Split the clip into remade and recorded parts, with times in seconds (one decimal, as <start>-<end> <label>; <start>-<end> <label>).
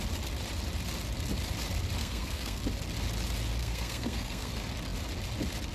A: 0.0-2.0 recorded; 2.0-2.6 remade; 2.6-3.6 recorded; 3.6-4.5 remade; 4.5-5.7 recorded